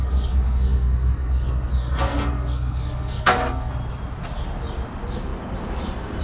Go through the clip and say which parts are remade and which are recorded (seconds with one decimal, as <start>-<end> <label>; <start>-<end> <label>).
0.0-3.7 remade; 3.7-6.2 recorded